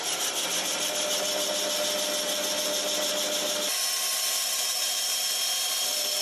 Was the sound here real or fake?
real